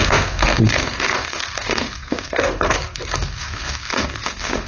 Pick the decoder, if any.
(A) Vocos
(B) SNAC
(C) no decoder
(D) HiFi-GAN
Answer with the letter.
B